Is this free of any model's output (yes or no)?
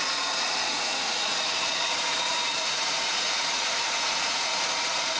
no